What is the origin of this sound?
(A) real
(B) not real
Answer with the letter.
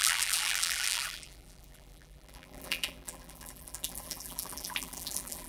B